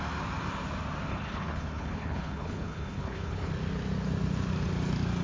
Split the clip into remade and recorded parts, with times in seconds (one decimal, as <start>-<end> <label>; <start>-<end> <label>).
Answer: 0.0-1.1 recorded; 1.1-3.5 remade; 3.5-5.2 recorded